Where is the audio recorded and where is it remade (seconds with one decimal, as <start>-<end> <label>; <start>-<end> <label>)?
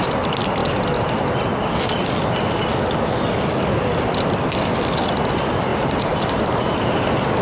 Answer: 0.0-5.7 recorded; 5.7-6.9 remade; 6.9-7.4 recorded